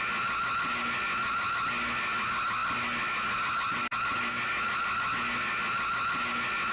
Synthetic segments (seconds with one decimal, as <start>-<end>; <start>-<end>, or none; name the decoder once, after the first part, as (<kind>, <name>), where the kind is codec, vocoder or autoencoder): none

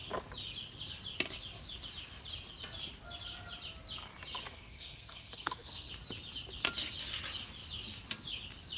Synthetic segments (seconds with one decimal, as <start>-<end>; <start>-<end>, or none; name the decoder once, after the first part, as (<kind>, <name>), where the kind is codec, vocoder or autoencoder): 4.4-5.9 (codec, SNAC)

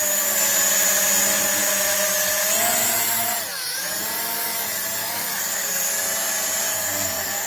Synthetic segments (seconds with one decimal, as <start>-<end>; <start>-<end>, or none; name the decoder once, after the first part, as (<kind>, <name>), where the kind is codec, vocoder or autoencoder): 5.0-5.9 (codec, SNAC); 6.7-7.5

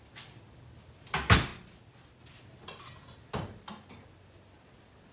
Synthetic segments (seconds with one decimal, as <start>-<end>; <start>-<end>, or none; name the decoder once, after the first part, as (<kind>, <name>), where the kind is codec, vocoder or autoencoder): none

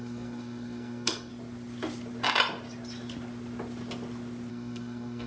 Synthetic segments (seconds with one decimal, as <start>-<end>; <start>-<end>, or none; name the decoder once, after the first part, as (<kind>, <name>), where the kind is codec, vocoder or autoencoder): 0.0-1.3 (codec, SNAC); 4.5-5.3

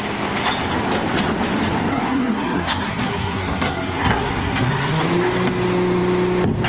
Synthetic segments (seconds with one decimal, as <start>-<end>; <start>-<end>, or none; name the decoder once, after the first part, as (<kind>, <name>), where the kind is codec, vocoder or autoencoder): 1.9-5.0 (codec, SNAC)

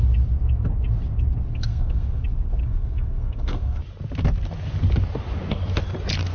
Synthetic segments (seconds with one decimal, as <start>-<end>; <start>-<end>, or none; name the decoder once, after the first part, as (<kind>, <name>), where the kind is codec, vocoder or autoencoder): 1.5-2.2 (codec, SNAC); 2.6-3.8

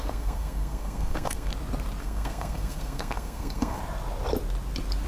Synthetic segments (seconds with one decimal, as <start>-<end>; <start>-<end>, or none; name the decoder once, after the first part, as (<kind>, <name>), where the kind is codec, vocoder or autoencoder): 0.0-1.5 (codec, SNAC); 2.0-3.8